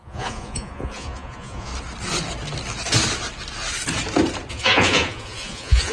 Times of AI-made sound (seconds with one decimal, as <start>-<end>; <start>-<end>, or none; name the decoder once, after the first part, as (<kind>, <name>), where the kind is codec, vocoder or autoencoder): 0.0-1.7 (vocoder, Vocos); 4.5-5.9